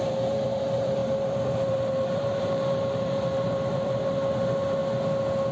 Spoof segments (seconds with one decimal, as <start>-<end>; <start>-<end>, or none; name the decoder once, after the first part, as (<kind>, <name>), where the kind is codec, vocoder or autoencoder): 0.0-4.8 (vocoder, BigVGAN v2)